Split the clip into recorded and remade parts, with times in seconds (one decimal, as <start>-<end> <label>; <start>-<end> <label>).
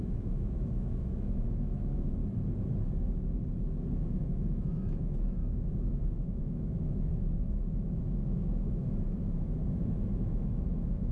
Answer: 0.0-2.2 remade; 2.2-3.9 recorded; 3.9-11.1 remade